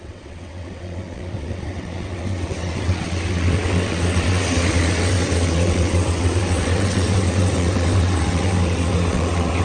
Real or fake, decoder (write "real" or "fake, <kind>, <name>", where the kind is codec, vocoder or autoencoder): fake, vocoder, WaveNeXt